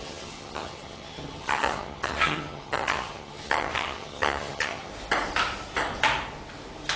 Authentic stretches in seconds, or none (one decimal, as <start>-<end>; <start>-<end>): 4.9-7.0